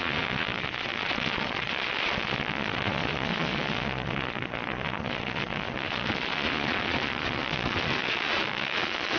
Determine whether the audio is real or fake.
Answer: fake